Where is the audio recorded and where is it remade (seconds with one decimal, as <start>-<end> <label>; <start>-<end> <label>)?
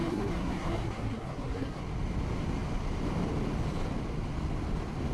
0.0-1.8 remade; 1.8-5.1 recorded